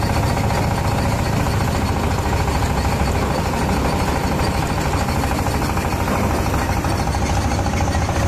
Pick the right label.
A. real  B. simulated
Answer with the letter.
A